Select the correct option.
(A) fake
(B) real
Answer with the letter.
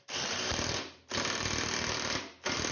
B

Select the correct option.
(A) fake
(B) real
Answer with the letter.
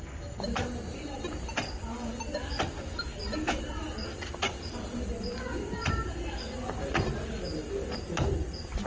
B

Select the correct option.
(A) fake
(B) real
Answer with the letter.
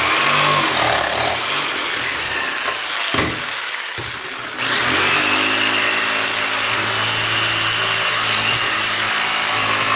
B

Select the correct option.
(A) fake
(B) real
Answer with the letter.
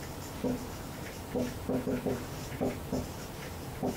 A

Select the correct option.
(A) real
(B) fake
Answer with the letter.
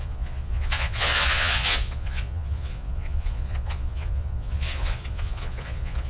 B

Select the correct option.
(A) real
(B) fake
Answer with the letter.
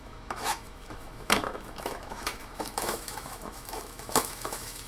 B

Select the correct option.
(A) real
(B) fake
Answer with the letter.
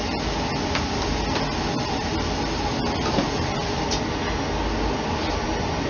A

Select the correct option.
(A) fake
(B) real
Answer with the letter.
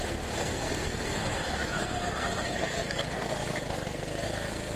A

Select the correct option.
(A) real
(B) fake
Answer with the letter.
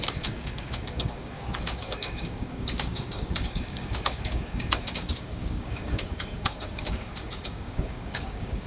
B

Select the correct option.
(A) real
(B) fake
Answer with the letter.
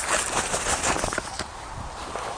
A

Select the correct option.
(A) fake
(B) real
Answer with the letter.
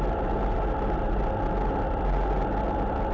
B